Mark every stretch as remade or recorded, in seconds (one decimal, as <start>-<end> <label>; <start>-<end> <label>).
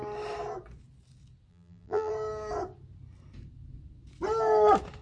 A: 0.0-1.5 recorded; 1.5-2.1 remade; 2.1-5.0 recorded